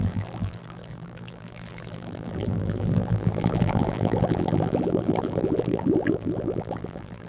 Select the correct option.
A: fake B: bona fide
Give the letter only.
A